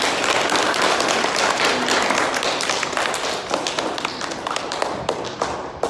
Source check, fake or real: real